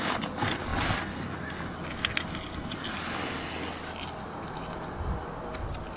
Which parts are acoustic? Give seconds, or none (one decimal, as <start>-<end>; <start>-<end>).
0.0-6.0